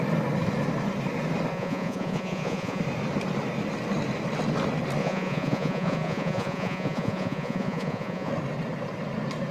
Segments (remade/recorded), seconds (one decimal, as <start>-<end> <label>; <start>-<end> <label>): 0.0-1.5 recorded; 1.5-2.8 remade; 2.8-5.0 recorded; 5.0-8.3 remade; 8.3-9.5 recorded